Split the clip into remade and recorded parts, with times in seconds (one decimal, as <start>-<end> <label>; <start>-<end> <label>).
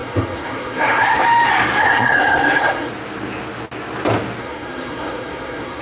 0.0-1.2 remade; 1.2-1.8 recorded; 1.8-2.9 remade; 2.9-4.4 recorded; 4.4-5.8 remade